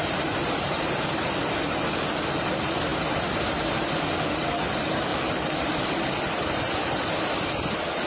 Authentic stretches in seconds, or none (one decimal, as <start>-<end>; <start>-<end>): 0.8-5.1; 5.9-8.1